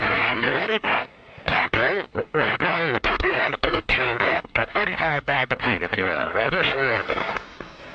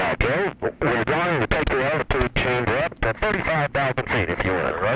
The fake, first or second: first